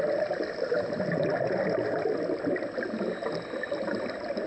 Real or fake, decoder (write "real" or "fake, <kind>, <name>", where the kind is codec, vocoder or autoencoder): real